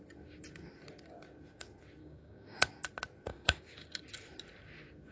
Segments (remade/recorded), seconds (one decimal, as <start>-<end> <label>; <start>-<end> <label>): 0.0-2.0 recorded; 2.0-2.6 remade; 2.6-3.3 recorded; 3.3-4.0 remade; 4.0-5.1 recorded